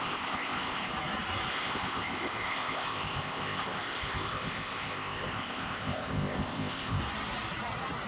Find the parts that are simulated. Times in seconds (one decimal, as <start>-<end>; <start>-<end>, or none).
0.0-0.9; 1.5-7.0